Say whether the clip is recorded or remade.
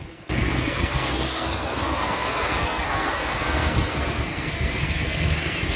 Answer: remade